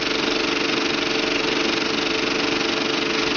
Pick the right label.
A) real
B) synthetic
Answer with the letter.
A